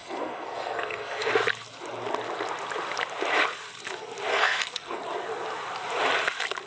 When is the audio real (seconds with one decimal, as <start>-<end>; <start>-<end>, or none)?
1.3-4.3; 5.0-6.7